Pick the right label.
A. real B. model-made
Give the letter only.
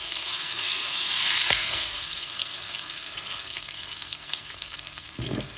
B